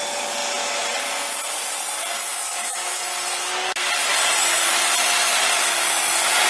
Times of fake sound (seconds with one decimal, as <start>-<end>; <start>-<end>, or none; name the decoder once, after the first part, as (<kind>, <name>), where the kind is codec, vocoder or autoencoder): 2.3-3.0 (autoencoder, DAC-VAE)